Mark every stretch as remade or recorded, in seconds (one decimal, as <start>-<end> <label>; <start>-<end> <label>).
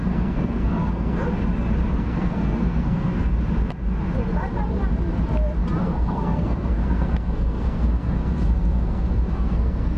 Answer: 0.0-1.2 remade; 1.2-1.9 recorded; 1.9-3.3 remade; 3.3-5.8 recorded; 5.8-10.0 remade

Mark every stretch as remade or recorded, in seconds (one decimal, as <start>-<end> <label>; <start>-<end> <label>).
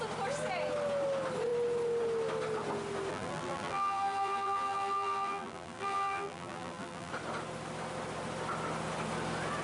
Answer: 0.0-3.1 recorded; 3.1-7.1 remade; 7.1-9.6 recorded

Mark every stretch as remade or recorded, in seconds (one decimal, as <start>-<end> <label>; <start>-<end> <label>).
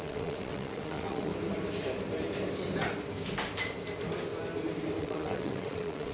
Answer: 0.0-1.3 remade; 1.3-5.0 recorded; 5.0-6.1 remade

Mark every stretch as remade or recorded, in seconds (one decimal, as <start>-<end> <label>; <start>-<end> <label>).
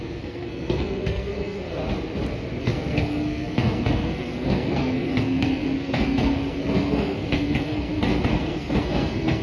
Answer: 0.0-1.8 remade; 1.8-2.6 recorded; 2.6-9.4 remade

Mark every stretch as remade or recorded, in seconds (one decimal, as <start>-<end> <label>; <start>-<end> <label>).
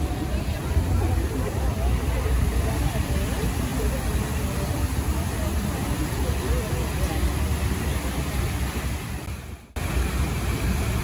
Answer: 0.0-0.6 remade; 0.6-1.6 recorded; 1.6-3.7 remade; 3.7-8.4 recorded; 8.4-9.8 remade; 9.8-11.0 recorded